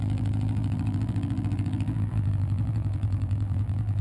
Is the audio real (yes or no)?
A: no